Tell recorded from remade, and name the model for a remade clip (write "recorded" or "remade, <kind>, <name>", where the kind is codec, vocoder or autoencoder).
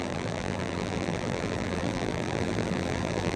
remade, vocoder, BigVGAN v2